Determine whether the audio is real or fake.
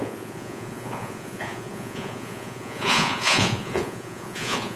fake